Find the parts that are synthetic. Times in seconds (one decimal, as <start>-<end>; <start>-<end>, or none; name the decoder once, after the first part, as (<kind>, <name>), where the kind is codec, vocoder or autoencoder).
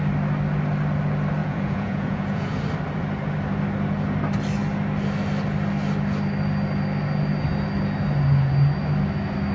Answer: 1.4-2.6 (vocoder, Vocos)